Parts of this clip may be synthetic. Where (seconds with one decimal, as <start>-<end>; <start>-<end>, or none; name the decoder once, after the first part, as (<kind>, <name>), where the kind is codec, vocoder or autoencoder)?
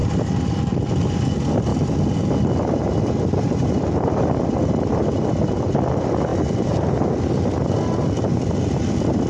none